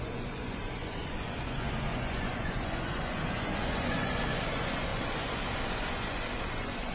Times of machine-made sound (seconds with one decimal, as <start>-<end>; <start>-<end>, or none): 0.0-6.9